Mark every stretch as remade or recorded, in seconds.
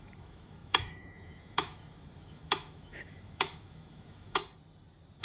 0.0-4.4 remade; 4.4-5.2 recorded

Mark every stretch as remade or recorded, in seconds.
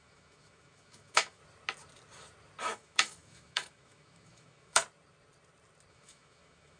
0.0-1.4 remade; 1.4-2.6 recorded; 2.6-4.8 remade; 4.8-5.9 recorded; 5.9-6.8 remade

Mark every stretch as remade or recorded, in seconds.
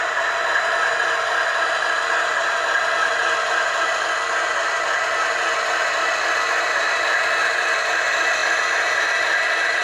0.0-9.8 recorded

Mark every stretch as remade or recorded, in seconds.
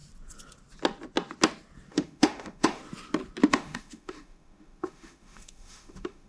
0.0-1.9 recorded; 1.9-2.8 remade; 2.8-3.5 recorded; 3.5-6.3 remade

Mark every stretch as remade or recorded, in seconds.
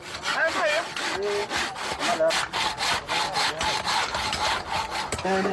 0.0-5.5 recorded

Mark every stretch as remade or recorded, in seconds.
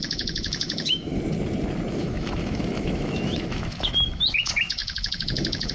0.0-1.1 remade; 1.1-1.9 recorded; 1.9-5.7 remade